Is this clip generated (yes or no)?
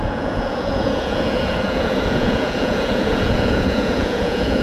yes